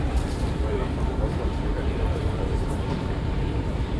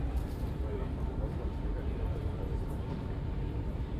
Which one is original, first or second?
second